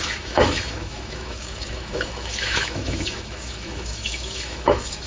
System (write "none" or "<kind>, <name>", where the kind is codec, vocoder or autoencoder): autoencoder, DAC-VAE